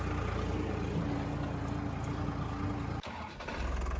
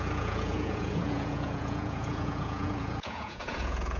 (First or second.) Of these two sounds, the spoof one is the second